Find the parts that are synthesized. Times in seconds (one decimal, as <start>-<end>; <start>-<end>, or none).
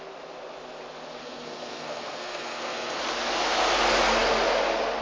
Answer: 1.2-3.0